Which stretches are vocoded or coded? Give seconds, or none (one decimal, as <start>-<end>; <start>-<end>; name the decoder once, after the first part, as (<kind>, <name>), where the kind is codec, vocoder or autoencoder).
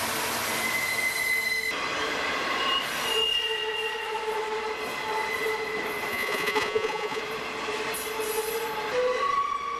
6.1-7.2 (vocoder, Vocos)